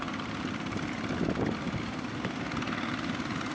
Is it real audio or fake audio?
real